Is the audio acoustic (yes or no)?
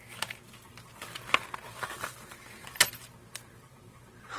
yes